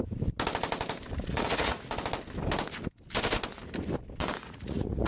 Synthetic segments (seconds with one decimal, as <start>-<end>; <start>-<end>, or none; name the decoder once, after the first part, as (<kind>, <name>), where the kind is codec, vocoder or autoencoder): 1.3-2.0 (vocoder, Vocos); 4.2-5.1